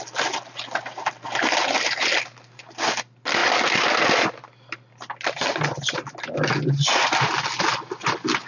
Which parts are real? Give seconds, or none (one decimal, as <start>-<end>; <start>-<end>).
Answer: 0.0-8.5